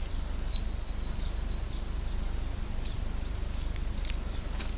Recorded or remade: remade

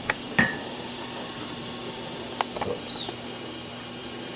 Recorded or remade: remade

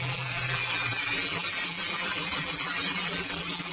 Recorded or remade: remade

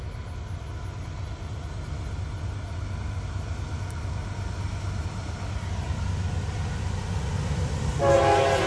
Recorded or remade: recorded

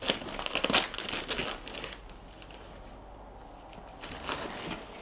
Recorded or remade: recorded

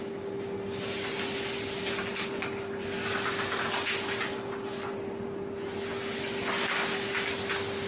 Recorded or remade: recorded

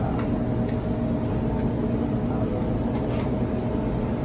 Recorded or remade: recorded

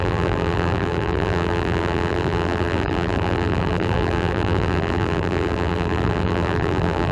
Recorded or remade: remade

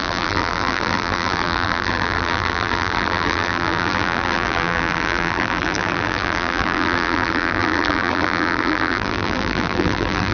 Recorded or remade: remade